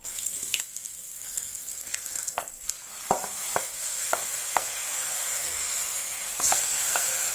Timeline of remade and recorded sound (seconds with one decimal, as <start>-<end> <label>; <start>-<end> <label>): 0.0-2.9 remade; 2.9-3.6 recorded; 3.6-7.3 remade